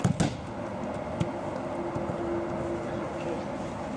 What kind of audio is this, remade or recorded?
recorded